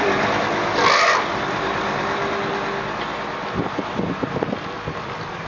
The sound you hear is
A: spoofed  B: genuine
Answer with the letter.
A